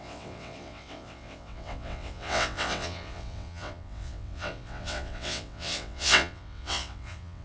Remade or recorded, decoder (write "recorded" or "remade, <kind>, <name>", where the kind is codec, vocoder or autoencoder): remade, vocoder, WaveNeXt